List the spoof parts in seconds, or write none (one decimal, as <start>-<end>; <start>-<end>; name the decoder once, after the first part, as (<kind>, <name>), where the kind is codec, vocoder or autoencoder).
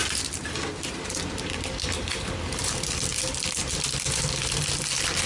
1.2-3.1 (vocoder, BigVGAN v2); 3.8-5.3